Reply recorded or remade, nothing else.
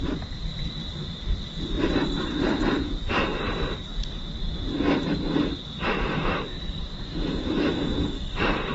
remade